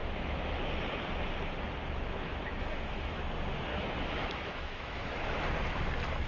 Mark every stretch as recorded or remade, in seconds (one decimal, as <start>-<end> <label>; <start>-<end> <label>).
0.0-0.7 remade; 0.7-1.8 recorded; 1.8-3.2 remade; 3.2-3.7 recorded; 3.7-5.4 remade; 5.4-6.3 recorded